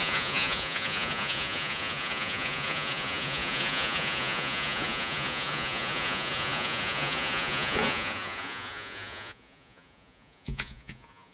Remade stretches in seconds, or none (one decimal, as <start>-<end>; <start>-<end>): 0.0-11.3